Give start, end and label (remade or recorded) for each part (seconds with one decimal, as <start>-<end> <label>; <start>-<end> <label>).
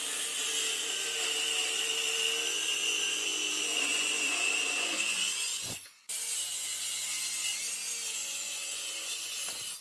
0.0-2.5 recorded; 2.5-6.8 remade; 6.8-8.2 recorded; 8.2-9.3 remade; 9.3-9.8 recorded